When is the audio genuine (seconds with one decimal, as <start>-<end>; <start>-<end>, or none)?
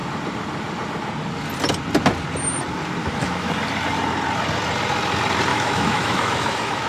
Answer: 0.0-3.0; 3.5-5.5